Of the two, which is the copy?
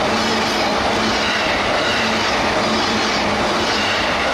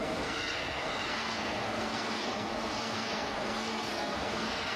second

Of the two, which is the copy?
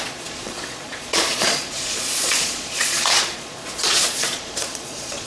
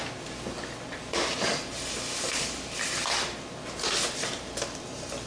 first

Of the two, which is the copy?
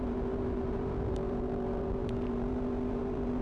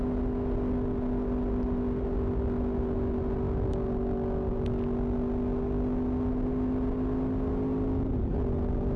first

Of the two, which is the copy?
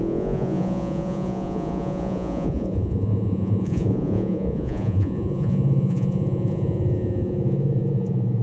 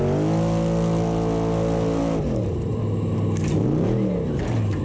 first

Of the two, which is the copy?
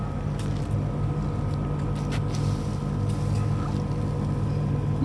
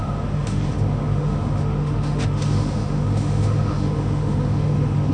second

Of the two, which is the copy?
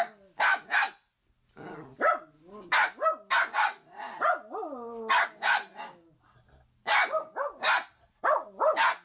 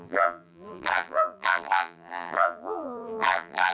second